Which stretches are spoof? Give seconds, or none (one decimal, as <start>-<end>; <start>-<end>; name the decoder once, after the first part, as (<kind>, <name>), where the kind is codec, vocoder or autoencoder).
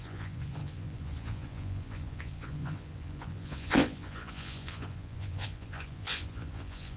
0.0-7.0 (vocoder, Vocos)